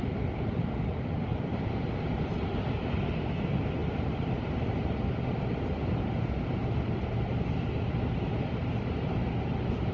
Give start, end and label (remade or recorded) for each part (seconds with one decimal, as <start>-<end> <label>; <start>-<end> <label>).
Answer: 0.0-9.9 recorded